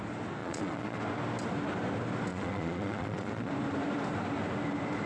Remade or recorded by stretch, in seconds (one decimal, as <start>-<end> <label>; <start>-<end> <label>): 0.0-0.4 recorded; 0.4-1.0 remade; 1.0-2.3 recorded; 2.3-3.5 remade; 3.5-5.1 recorded